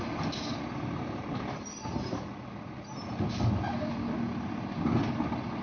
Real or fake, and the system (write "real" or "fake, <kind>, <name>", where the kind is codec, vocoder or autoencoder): real